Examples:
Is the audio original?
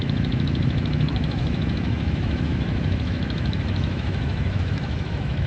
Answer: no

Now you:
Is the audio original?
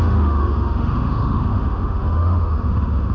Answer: no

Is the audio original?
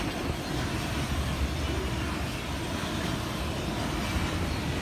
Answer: yes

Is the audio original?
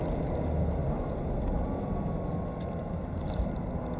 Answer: yes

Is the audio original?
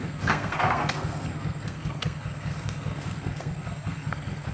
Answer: no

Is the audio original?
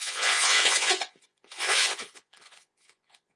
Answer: no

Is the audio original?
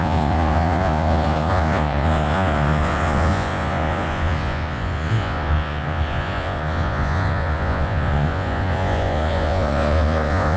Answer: no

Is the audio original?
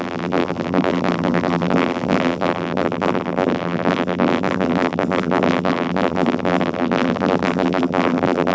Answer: no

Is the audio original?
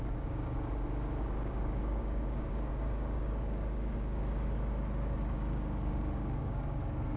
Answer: no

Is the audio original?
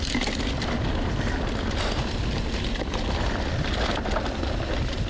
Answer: yes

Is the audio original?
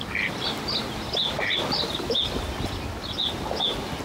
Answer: yes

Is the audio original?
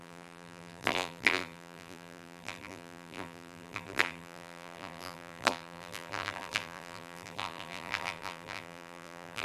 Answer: no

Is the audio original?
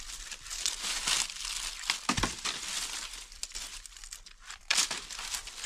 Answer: yes